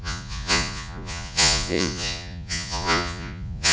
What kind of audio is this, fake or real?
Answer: fake